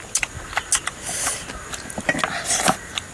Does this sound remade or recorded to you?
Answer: recorded